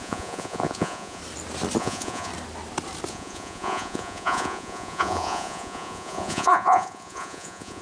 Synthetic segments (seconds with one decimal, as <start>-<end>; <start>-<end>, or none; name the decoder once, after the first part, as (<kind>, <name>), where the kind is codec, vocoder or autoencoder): 0.0-1.2 (vocoder, Vocos); 1.8-2.3; 3.1-7.8